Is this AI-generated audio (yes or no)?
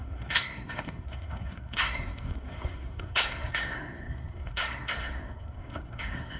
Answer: yes